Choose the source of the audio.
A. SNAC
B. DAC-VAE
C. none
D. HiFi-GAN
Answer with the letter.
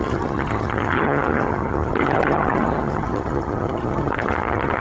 D